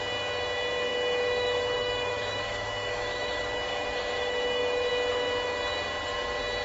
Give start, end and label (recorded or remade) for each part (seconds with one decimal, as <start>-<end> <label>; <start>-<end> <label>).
0.0-0.9 recorded; 0.9-4.9 remade; 4.9-6.6 recorded